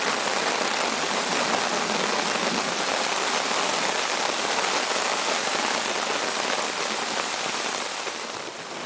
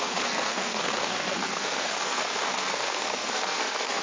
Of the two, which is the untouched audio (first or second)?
first